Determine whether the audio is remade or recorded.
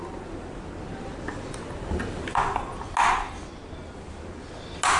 recorded